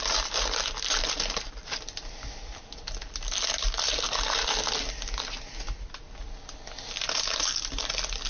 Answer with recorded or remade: recorded